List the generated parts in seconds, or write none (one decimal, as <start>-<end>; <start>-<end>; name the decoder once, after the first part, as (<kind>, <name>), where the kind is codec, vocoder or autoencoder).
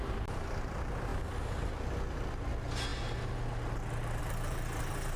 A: none